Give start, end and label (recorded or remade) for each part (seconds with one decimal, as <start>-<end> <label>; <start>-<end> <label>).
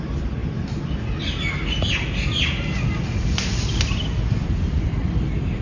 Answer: 0.0-5.6 recorded